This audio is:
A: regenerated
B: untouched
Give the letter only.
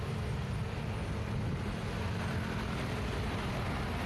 B